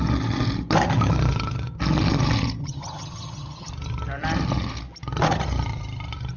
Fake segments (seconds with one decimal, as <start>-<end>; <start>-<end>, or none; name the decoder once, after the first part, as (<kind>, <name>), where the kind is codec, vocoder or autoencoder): 2.6-3.7 (vocoder, HiFi-GAN)